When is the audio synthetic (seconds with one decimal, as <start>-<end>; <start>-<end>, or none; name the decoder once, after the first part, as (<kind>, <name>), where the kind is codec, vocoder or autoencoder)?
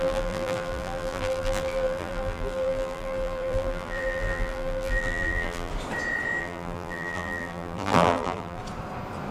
0.0-5.7 (vocoder, BigVGAN v2); 6.4-8.6